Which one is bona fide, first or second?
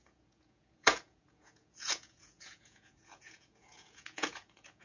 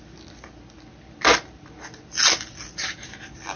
second